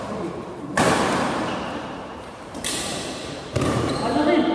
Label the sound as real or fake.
fake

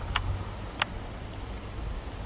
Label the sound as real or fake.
real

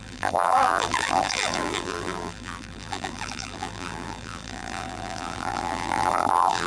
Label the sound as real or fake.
fake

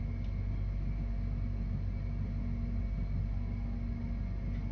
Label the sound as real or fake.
real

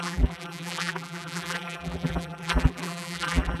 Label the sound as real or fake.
fake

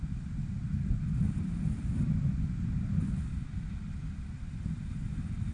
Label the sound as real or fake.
fake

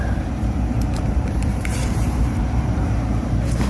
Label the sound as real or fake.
fake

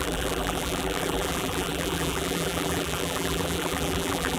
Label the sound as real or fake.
fake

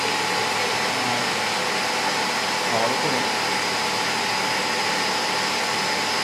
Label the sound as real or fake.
real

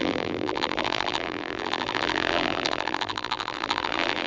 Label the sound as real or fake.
fake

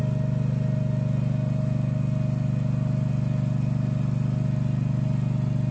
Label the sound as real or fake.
real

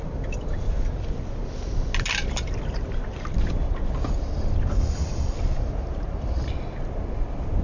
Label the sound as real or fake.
real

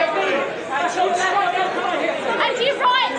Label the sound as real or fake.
real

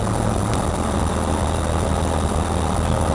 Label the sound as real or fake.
real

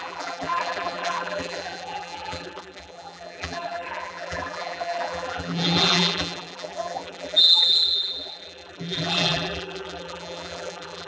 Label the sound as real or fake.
fake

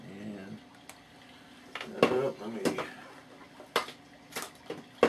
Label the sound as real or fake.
real